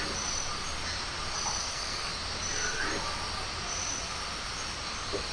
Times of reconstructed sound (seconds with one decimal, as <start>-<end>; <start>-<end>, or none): 1.6-2.1